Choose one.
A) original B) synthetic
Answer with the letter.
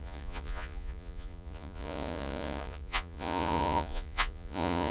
B